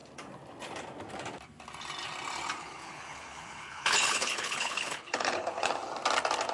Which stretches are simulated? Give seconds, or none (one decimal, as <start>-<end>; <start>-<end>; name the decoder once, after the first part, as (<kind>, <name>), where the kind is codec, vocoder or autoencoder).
2.6-5.7 (codec, HILCodec)